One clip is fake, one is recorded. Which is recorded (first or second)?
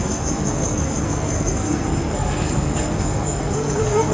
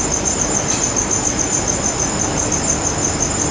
second